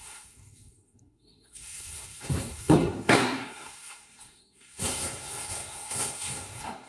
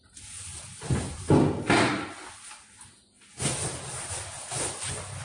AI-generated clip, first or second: first